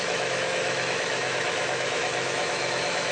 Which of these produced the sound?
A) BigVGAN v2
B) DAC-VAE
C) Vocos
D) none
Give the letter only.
B